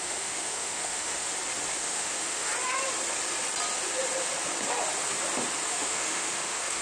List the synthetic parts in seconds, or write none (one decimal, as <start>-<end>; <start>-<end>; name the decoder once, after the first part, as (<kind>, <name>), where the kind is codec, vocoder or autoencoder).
0.0-1.3 (autoencoder, DAC-VAE); 1.8-2.5; 5.7-6.8